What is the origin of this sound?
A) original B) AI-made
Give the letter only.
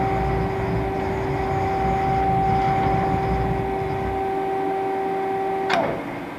A